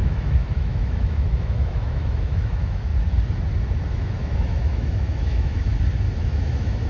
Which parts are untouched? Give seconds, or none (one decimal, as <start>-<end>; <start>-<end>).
2.9-3.9; 5.7-6.2